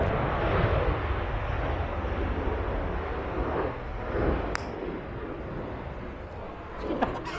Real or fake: real